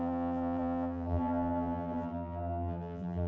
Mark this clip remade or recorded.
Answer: remade